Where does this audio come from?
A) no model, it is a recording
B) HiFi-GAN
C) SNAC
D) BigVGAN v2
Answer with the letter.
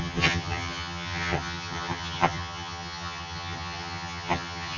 B